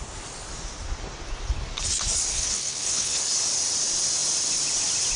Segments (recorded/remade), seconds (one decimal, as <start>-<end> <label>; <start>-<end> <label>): 0.0-2.3 recorded; 2.3-3.2 remade; 3.2-5.2 recorded